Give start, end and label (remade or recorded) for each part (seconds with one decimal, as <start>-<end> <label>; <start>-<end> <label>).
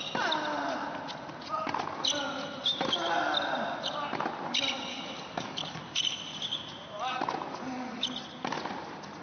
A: 0.0-4.9 recorded; 4.9-5.8 remade; 5.8-9.2 recorded